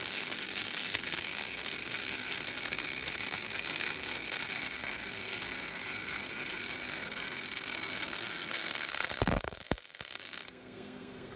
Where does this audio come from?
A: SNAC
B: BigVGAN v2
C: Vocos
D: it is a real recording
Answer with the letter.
A